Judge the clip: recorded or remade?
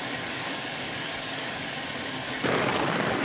remade